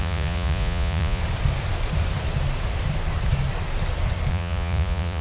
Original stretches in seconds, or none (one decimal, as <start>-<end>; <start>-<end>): 1.2-4.3